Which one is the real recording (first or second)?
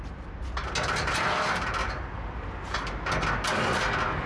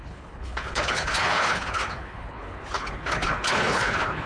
first